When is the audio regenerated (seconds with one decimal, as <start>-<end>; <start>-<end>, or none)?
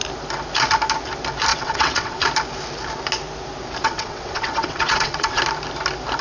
1.5-2.2; 3.8-5.4